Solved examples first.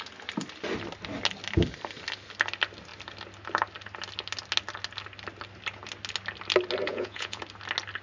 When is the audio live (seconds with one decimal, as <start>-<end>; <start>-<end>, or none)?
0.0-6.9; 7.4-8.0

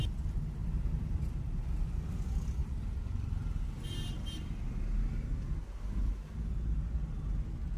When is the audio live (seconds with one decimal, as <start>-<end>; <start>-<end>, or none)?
0.0-0.6; 1.2-2.6; 3.6-7.8

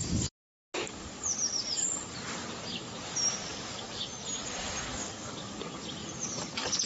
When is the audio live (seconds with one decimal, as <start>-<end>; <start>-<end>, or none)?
0.0-3.5; 4.0-4.9; 5.6-6.9